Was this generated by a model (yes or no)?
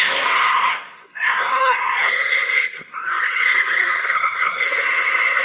yes